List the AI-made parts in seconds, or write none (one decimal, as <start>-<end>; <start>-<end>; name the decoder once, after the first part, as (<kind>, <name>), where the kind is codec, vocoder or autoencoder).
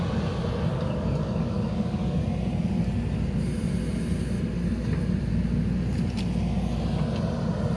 0.7-2.2 (codec, DAC)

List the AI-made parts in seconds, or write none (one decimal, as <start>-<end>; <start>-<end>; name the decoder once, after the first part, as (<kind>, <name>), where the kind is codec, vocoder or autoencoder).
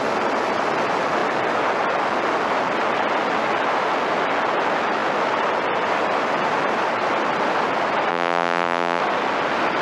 8.1-9.0 (vocoder, BigVGAN v2)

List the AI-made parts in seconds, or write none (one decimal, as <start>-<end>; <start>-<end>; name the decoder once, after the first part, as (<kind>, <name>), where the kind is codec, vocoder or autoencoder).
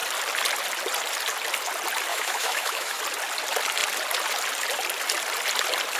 2.1-3.0 (autoencoder, DAC-VAE)